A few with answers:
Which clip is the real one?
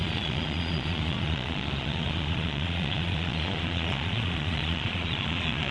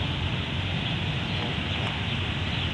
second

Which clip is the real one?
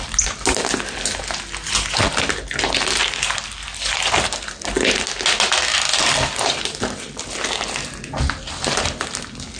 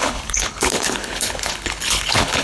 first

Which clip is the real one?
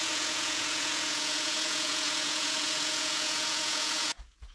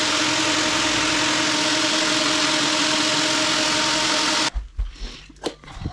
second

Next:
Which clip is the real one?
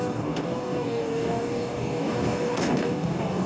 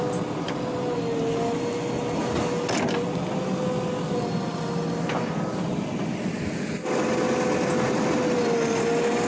second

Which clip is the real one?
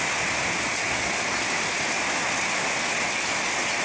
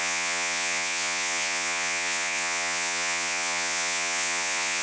first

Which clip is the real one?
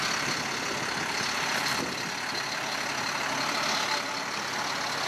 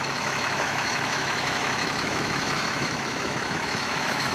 first